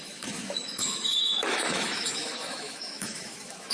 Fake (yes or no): yes